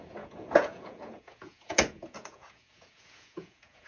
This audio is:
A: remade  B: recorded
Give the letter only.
A